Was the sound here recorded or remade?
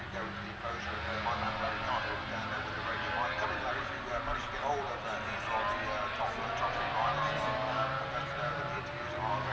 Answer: recorded